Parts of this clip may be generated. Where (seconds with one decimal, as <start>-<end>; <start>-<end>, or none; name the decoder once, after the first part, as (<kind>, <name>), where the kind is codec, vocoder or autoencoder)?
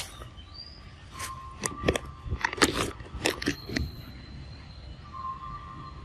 3.5-4.1 (codec, HILCodec)